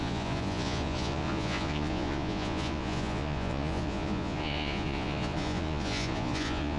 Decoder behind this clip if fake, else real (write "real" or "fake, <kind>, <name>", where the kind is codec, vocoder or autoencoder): fake, vocoder, Vocos